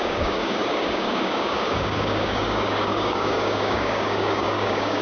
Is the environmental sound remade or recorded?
remade